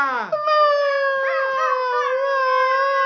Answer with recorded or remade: recorded